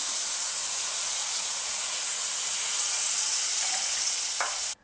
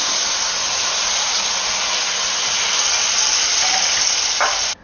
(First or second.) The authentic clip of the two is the second